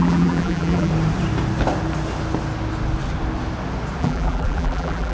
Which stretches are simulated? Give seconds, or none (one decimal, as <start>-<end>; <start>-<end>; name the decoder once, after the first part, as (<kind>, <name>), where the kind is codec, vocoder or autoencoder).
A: 0.0-0.9 (vocoder, BigVGAN v2); 4.0-5.1